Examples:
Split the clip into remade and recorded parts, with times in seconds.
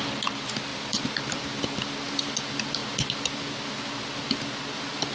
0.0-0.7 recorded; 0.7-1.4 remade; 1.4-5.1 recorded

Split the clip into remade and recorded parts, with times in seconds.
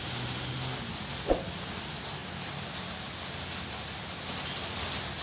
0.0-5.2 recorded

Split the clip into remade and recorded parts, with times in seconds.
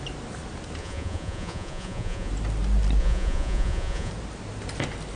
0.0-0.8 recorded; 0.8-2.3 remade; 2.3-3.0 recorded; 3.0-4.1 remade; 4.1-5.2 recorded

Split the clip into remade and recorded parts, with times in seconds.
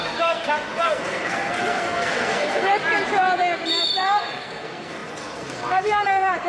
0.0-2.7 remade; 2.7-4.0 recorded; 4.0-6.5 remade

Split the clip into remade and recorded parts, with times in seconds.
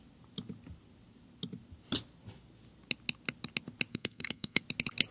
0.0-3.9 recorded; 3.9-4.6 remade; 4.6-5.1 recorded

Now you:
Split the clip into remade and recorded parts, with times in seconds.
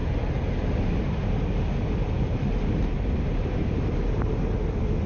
0.0-5.1 recorded